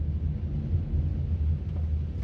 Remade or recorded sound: recorded